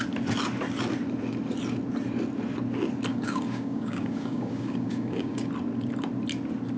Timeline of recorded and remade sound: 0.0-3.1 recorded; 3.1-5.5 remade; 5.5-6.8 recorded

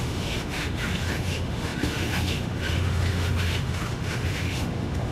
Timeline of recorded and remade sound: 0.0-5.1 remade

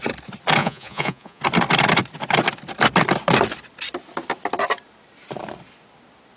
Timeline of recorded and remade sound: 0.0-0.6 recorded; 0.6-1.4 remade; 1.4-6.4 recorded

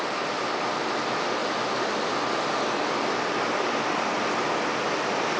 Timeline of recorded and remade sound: 0.0-5.4 recorded

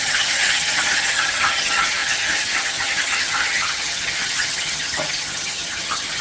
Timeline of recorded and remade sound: 0.0-6.2 remade